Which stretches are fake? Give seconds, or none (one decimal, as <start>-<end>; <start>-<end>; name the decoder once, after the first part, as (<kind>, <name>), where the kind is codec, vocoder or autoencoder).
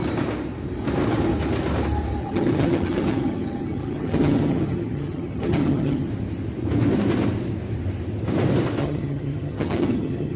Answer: 2.2-6.1 (vocoder, HiFi-GAN); 8.8-10.4